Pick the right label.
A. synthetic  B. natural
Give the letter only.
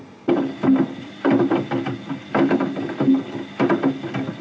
B